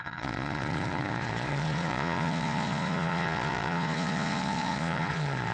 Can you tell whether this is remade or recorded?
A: remade